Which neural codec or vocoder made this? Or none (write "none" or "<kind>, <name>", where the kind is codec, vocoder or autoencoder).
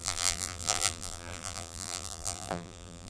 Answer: vocoder, BigVGAN v2